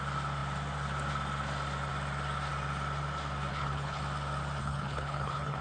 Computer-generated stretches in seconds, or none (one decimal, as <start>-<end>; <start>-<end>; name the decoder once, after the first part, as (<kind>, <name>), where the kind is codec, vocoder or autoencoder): 3.5-4.0 (codec, HILCodec); 4.6-5.6